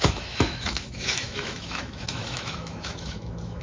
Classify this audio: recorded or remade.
remade